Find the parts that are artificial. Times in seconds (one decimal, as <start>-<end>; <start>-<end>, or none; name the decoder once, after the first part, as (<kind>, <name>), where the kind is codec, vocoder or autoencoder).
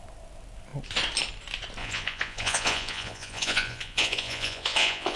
1.8-5.2 (vocoder, Vocos)